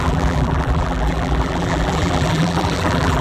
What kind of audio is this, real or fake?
fake